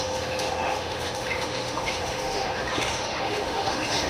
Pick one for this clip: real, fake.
fake